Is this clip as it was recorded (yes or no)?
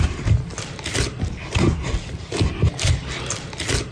yes